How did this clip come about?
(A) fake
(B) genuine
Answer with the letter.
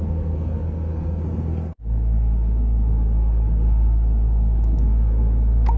A